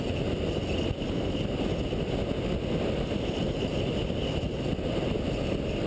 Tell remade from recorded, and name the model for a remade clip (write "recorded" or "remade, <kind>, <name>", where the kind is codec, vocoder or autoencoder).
recorded